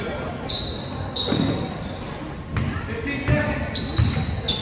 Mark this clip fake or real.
real